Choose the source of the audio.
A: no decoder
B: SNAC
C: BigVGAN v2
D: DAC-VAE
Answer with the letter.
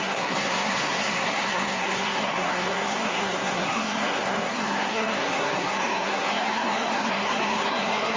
B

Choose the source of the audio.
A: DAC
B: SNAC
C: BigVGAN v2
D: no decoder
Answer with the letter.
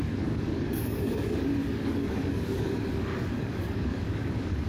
A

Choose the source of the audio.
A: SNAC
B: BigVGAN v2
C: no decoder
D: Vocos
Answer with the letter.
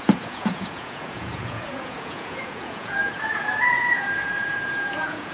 D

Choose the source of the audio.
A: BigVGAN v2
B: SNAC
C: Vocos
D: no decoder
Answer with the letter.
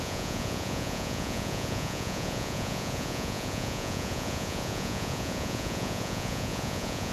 C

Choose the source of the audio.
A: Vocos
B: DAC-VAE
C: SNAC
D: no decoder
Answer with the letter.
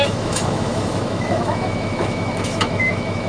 B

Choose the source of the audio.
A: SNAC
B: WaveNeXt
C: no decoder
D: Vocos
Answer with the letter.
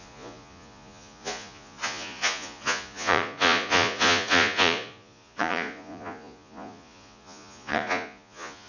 D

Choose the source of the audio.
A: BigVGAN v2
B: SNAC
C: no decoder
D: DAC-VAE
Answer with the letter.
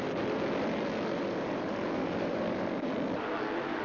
A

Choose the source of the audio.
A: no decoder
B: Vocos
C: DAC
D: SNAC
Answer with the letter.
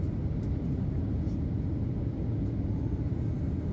A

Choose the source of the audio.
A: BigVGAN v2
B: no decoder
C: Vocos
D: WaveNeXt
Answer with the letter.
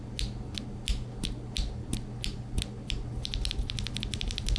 B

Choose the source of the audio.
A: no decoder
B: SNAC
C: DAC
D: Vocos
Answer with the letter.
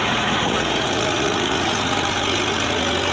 D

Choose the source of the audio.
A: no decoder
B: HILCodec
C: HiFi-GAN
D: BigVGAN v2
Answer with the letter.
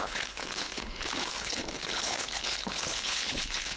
B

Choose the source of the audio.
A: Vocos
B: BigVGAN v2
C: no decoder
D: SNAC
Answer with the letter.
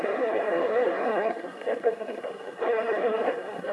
D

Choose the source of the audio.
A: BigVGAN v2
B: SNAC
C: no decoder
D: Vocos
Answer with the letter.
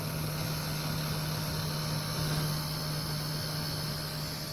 C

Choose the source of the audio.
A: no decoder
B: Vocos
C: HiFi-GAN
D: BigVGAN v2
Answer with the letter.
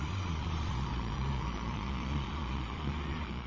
B